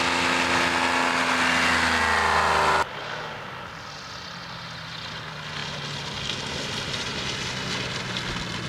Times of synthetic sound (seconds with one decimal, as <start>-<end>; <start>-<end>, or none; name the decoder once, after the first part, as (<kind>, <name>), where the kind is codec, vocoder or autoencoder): none